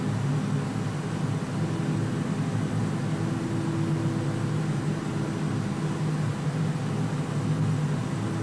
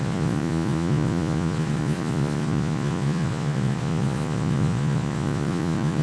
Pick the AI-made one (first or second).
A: second